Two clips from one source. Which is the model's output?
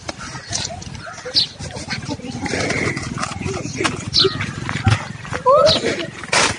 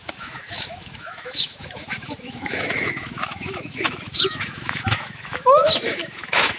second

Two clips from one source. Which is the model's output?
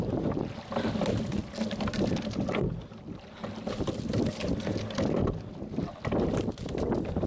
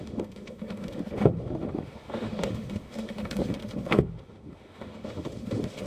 second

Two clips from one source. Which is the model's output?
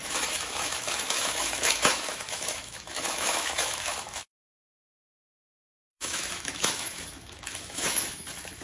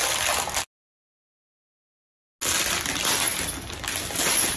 first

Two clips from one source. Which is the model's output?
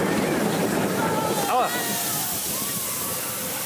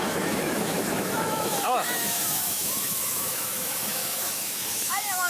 second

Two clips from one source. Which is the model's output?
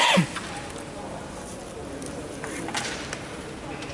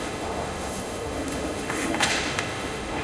second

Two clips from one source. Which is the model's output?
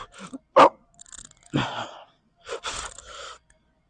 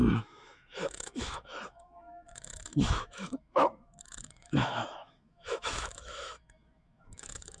second